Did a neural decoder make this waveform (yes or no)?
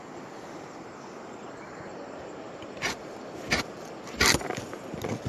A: no